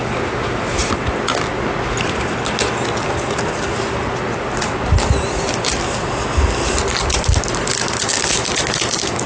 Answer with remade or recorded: recorded